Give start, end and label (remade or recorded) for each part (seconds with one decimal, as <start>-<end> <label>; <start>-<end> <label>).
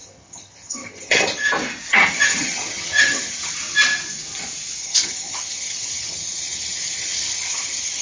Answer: 0.0-1.5 remade; 1.5-1.9 recorded; 1.9-3.5 remade; 3.5-4.8 recorded; 4.8-8.0 remade